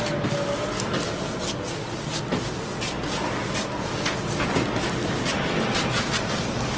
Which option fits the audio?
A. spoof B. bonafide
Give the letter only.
B